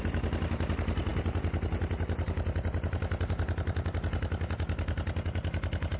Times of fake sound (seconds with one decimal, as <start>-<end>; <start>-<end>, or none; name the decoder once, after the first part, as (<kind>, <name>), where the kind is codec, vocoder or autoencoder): none